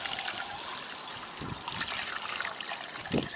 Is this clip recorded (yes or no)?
yes